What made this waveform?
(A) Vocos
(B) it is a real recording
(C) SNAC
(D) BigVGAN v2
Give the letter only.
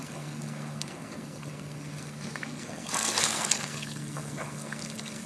C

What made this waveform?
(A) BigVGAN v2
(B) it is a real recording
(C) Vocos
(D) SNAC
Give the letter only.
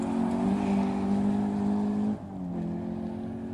B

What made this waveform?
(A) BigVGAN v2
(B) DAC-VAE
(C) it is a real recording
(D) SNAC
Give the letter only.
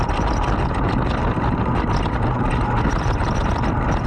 C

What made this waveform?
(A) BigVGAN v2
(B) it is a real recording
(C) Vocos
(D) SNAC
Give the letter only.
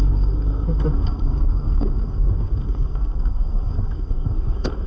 D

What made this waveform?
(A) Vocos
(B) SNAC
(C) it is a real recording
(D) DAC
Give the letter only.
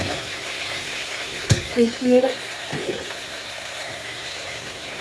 B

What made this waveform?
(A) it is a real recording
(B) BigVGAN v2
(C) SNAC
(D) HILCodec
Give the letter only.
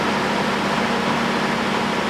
A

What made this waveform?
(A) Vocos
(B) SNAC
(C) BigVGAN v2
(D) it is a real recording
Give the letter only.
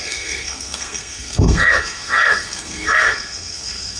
B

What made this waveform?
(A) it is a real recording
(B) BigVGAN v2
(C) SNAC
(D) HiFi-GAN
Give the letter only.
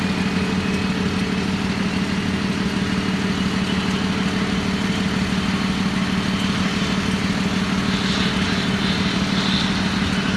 A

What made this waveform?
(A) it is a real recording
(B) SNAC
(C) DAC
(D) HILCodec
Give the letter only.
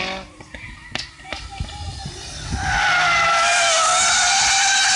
A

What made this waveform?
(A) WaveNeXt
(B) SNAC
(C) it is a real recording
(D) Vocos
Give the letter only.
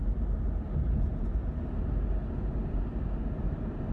C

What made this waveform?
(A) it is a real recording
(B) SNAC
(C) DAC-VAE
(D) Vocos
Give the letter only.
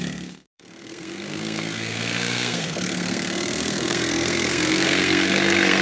B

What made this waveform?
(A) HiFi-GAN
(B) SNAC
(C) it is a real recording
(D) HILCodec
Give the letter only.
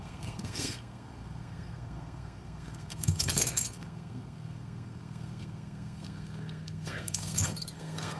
B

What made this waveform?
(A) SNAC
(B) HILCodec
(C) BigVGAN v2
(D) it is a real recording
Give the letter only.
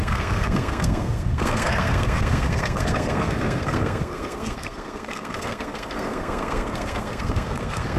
A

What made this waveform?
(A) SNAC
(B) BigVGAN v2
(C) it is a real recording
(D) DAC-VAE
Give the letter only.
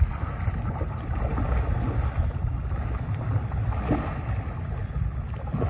C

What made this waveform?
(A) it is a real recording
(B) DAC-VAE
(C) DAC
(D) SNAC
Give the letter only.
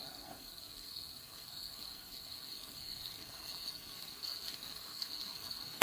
D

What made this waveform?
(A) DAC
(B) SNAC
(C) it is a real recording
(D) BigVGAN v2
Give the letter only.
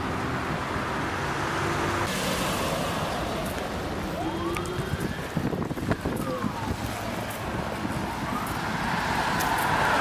C